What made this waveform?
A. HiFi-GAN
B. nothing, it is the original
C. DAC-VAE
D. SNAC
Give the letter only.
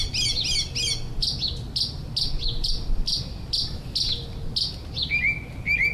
B